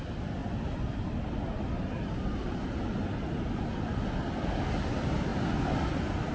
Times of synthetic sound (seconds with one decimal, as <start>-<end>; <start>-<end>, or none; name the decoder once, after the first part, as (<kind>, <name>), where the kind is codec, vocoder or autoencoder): none